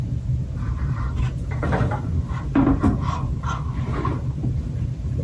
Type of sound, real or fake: fake